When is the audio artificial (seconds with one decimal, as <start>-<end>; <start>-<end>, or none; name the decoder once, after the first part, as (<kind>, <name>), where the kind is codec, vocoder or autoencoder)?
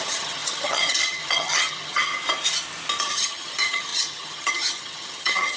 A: 0.0-2.1 (vocoder, HiFi-GAN); 3.0-5.6